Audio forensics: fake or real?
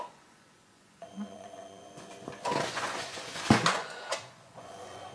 fake